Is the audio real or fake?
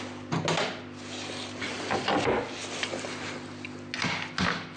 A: real